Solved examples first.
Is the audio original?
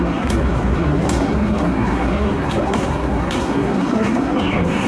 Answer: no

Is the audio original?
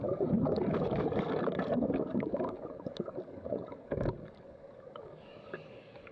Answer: no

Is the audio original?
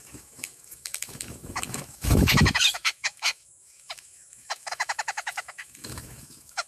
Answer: no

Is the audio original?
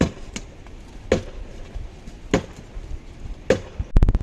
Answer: yes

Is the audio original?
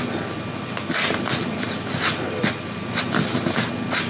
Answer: yes